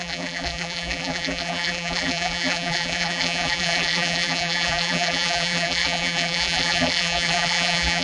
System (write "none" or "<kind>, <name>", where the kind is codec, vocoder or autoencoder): vocoder, BigVGAN v2